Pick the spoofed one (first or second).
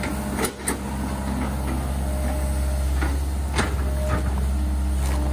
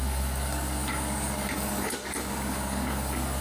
second